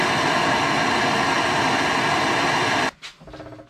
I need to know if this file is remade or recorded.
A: recorded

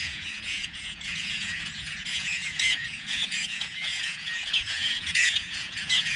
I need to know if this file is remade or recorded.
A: remade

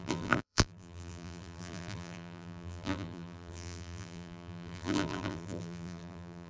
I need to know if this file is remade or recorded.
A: remade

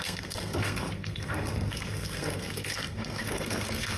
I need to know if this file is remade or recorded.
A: remade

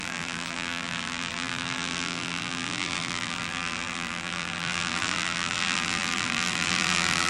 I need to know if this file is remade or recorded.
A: remade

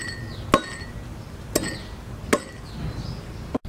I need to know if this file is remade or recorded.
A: recorded